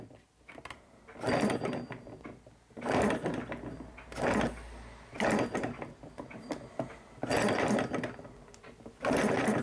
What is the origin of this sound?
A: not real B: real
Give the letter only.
B